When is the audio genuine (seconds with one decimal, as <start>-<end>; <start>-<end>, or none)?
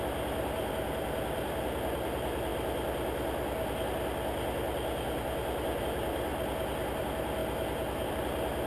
2.5-5.8; 6.3-7.0; 7.4-8.1